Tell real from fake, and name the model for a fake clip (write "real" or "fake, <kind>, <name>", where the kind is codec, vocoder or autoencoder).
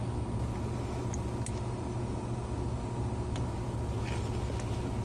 real